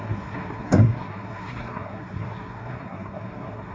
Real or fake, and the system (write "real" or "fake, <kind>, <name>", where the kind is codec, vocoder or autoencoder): fake, codec, SNAC